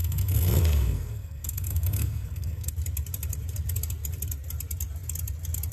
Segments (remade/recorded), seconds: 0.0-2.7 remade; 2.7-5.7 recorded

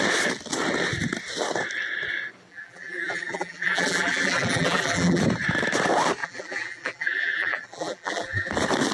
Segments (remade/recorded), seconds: 0.0-2.5 recorded; 2.5-5.2 remade; 5.2-6.2 recorded; 6.2-8.5 remade; 8.5-8.9 recorded

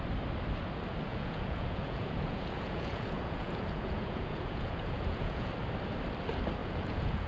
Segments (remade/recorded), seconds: 0.0-1.1 recorded; 1.1-5.5 remade; 5.5-6.6 recorded; 6.6-7.3 remade

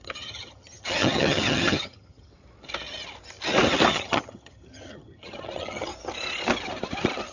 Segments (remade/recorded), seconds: 0.0-2.3 remade; 2.3-3.9 recorded; 3.9-5.9 remade; 5.9-7.3 recorded

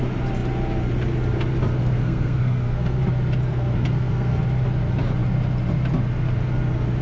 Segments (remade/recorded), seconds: 0.0-1.8 recorded; 1.8-3.0 remade; 3.0-3.5 recorded; 3.5-4.4 remade; 4.4-7.0 recorded

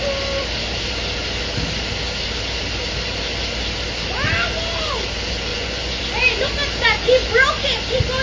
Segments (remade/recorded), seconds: 0.0-5.5 recorded; 5.5-6.0 remade; 6.0-8.2 recorded

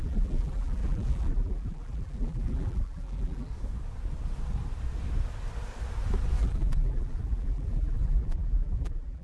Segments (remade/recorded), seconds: 0.0-3.5 remade; 3.5-6.4 recorded; 6.4-9.2 remade